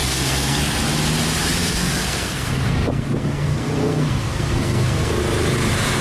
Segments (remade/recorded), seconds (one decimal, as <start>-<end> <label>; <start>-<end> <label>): 0.0-0.6 remade; 0.6-1.6 recorded; 1.6-5.2 remade; 5.2-6.0 recorded